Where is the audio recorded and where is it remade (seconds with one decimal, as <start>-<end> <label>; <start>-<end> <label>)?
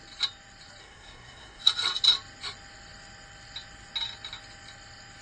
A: 0.0-0.8 recorded; 0.8-1.6 remade; 1.6-5.2 recorded